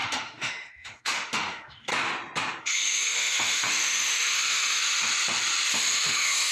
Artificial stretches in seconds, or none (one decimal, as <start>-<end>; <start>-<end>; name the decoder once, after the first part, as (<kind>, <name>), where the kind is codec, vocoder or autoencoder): 0.0-1.9 (autoencoder, DAC-VAE); 2.6-4.8; 5.7-6.5